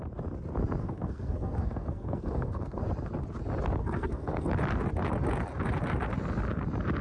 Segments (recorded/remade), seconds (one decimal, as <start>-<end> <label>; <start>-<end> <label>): 0.0-0.8 recorded; 0.8-2.8 remade; 2.8-3.8 recorded; 3.8-4.5 remade; 4.5-7.0 recorded